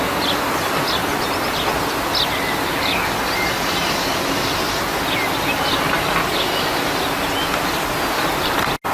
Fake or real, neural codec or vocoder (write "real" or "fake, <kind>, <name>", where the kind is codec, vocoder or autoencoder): real